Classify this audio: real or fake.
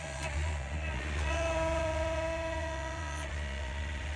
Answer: fake